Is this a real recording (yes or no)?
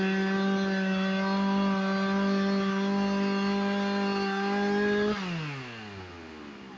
yes